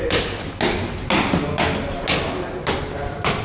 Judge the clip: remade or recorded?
recorded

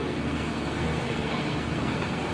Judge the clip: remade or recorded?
remade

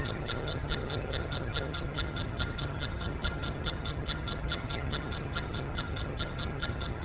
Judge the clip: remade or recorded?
remade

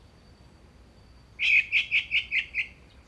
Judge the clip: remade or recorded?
recorded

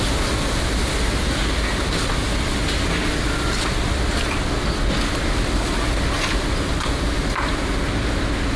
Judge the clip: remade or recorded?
recorded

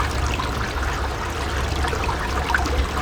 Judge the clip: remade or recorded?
recorded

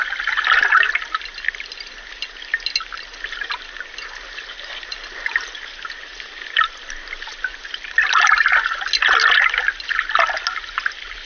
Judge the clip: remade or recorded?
recorded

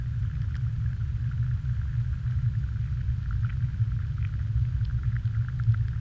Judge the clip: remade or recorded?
recorded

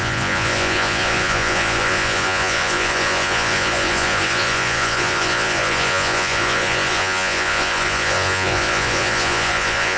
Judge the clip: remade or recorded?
remade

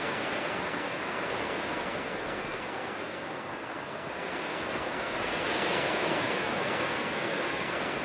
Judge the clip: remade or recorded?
remade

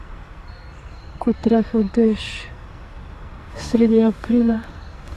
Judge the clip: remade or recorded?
remade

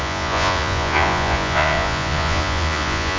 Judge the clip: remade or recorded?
remade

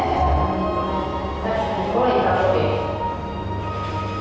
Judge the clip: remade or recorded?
recorded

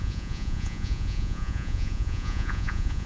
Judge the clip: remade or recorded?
remade